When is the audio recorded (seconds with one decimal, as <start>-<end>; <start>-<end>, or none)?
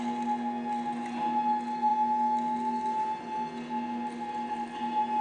0.0-5.2